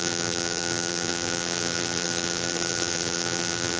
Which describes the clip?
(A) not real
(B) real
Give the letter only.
A